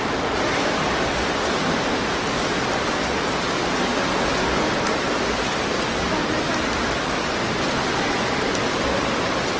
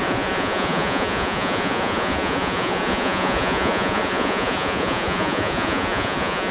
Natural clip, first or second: first